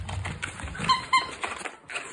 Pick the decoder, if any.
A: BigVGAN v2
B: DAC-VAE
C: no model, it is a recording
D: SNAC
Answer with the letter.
A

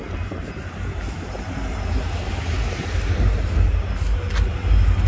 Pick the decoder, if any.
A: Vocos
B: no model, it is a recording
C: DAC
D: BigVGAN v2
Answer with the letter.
B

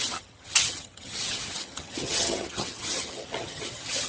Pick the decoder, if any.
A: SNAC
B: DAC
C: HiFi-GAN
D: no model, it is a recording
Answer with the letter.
C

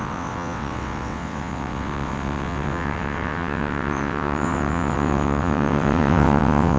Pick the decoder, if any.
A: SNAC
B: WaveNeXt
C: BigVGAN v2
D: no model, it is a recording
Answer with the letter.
B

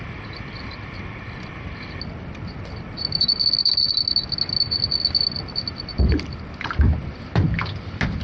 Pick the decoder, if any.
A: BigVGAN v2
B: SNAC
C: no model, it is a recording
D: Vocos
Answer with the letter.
C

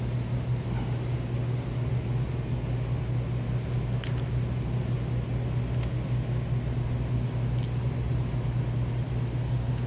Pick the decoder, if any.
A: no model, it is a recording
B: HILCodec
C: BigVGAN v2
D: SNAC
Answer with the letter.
A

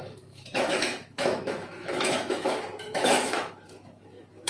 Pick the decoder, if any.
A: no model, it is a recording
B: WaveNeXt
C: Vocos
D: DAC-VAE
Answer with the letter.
D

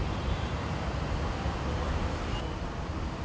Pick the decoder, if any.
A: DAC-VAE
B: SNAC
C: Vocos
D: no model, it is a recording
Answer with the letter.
D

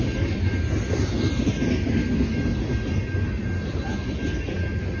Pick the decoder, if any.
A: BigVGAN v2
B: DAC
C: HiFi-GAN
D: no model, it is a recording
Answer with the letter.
D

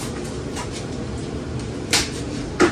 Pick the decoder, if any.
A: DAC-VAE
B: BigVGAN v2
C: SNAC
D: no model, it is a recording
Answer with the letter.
B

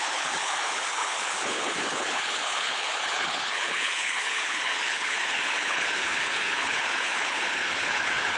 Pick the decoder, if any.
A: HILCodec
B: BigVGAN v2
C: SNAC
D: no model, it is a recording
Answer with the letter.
A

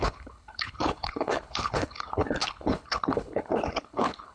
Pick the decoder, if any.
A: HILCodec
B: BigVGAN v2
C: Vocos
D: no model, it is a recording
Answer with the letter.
A